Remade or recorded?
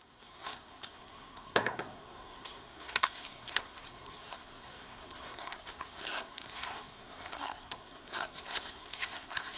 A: remade